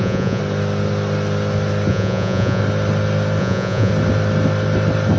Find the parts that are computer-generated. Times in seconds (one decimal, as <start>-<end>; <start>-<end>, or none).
0.0-0.4; 1.9-2.6; 3.4-3.9